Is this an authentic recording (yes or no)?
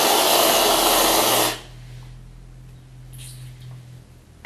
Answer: yes